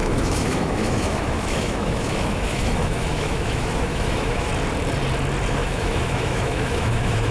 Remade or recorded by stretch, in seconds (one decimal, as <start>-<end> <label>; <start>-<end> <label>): 0.0-4.5 remade; 4.5-5.5 recorded; 5.5-7.3 remade